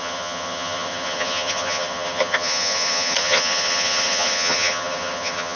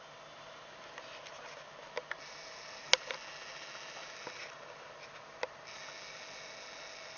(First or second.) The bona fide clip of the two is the second